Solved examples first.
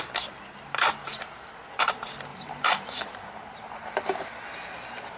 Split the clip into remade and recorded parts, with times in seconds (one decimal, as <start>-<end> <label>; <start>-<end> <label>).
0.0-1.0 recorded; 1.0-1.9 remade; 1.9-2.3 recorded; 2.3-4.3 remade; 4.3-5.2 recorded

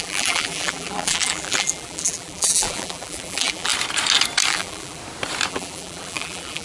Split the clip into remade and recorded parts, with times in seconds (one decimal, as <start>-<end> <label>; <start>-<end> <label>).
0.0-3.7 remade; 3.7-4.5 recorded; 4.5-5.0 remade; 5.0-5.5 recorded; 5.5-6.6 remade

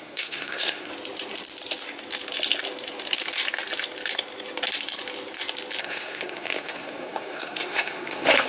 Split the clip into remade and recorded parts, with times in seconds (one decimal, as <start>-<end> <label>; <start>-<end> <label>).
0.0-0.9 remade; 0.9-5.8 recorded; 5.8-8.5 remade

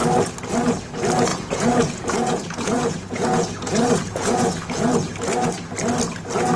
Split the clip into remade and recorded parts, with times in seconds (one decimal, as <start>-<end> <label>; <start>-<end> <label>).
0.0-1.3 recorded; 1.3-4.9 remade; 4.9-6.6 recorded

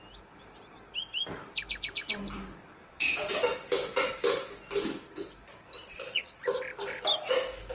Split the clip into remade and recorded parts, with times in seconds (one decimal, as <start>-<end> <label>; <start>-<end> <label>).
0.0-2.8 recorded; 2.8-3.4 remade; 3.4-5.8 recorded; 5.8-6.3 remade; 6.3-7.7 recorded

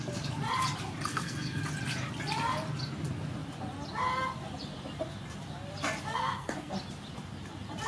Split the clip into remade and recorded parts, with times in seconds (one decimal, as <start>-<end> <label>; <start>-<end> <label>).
0.0-1.1 recorded; 1.1-1.6 remade; 1.6-6.2 recorded; 6.2-6.7 remade; 6.7-7.9 recorded

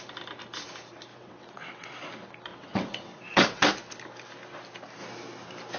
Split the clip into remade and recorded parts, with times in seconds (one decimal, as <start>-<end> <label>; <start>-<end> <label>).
0.0-1.1 recorded; 1.1-2.1 remade; 2.1-2.5 recorded; 2.5-3.6 remade; 3.6-5.8 recorded

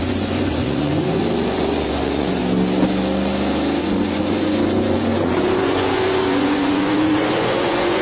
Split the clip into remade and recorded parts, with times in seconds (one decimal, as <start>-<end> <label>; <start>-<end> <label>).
0.0-2.4 remade; 2.4-3.8 recorded; 3.8-8.0 remade